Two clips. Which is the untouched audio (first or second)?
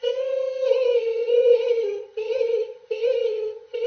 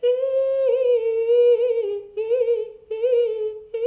second